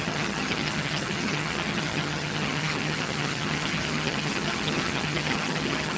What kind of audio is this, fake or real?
fake